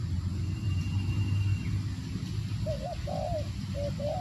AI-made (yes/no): no